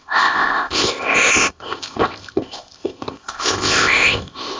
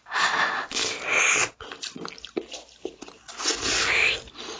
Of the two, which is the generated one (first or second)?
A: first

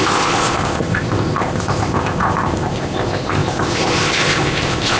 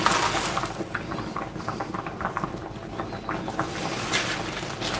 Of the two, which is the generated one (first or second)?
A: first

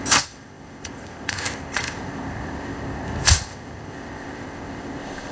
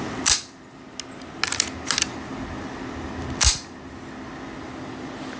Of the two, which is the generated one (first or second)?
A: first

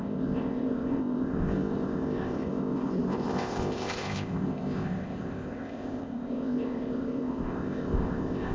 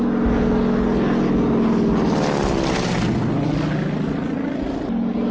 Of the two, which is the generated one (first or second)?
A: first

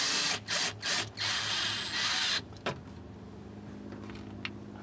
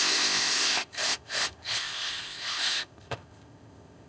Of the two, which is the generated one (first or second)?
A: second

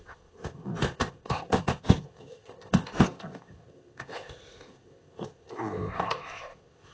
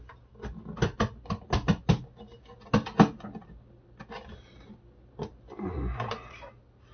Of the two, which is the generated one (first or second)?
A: first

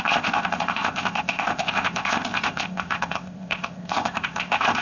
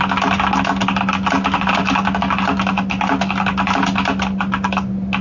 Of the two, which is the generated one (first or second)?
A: first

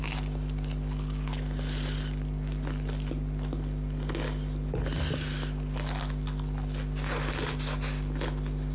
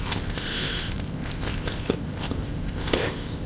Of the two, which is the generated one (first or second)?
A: second